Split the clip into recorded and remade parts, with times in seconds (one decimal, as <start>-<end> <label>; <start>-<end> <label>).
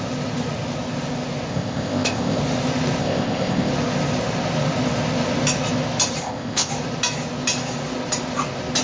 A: 0.0-1.5 recorded; 1.5-2.4 remade; 2.4-3.0 recorded; 3.0-3.7 remade; 3.7-6.2 recorded; 6.2-6.7 remade; 6.7-8.8 recorded